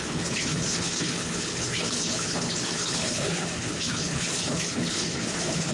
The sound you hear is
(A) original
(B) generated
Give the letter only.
B